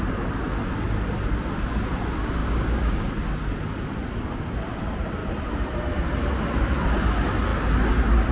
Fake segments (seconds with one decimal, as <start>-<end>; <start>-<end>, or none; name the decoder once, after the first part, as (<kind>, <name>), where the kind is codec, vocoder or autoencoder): 2.4-3.1 (codec, DAC)